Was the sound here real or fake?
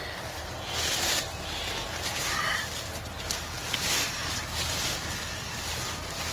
real